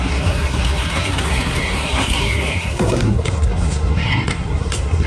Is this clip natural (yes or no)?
no